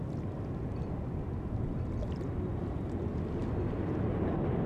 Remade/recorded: recorded